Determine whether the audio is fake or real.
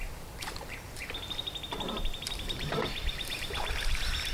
fake